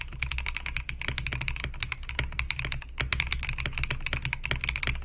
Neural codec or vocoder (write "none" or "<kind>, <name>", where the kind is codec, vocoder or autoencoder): none